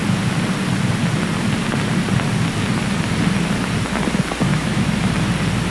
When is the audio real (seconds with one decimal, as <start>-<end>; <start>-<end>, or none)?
0.0-4.5; 5.1-5.7